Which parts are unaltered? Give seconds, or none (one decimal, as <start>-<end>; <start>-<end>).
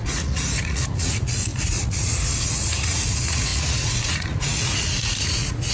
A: none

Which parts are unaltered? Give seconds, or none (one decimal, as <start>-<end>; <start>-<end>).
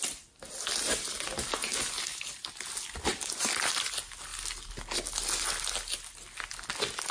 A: 0.0-7.1